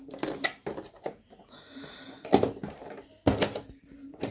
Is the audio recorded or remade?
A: recorded